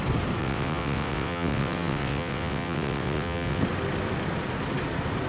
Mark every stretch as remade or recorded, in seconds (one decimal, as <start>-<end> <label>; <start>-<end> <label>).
0.0-0.4 recorded; 0.4-3.6 remade; 3.6-5.3 recorded